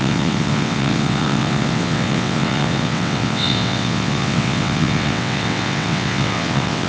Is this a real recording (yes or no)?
no